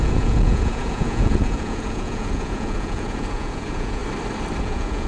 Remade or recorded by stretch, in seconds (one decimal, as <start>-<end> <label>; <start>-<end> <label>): 0.0-4.0 remade; 4.0-4.6 recorded; 4.6-5.1 remade